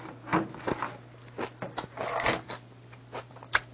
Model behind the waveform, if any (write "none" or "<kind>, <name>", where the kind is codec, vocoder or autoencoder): none